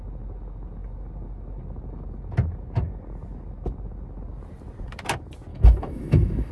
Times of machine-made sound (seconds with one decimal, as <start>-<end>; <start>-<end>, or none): 5.5-6.5